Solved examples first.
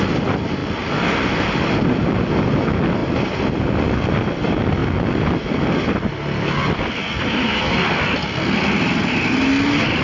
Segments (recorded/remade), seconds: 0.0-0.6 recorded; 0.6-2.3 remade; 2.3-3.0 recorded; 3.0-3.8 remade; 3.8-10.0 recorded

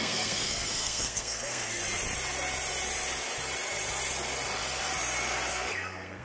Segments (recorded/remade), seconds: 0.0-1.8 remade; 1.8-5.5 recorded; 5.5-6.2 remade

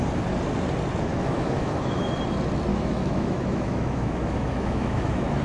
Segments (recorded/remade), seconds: 0.0-1.1 recorded; 1.1-2.1 remade; 2.1-2.7 recorded; 2.7-5.4 remade

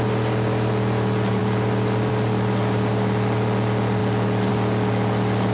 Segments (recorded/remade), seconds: 0.0-5.5 recorded